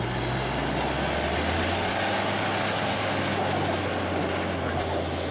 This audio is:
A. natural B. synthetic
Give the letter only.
A